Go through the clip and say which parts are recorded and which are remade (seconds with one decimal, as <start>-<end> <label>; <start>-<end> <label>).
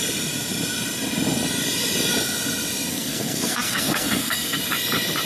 0.0-2.9 recorded; 2.9-4.6 remade; 4.6-5.3 recorded